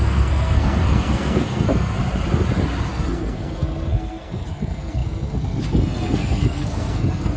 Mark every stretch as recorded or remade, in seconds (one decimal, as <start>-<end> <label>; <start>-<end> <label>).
0.0-2.0 remade; 2.0-2.9 recorded; 2.9-7.4 remade